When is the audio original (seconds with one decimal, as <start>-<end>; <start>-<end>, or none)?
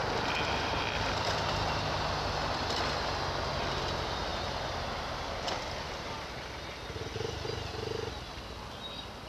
0.0-9.3